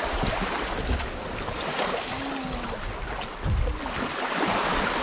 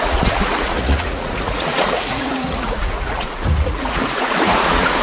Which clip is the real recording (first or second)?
first